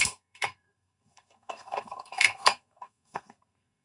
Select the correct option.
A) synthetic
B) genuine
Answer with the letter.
A